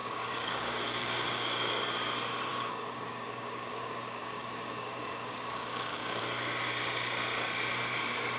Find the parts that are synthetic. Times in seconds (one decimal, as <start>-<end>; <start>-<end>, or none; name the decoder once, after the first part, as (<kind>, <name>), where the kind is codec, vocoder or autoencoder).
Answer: 0.0-1.7 (codec, DAC); 2.5-6.2